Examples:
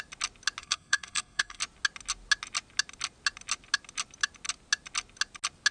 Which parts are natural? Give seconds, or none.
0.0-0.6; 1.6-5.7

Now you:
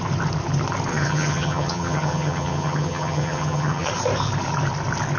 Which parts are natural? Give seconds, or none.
0.0-0.9; 3.9-5.2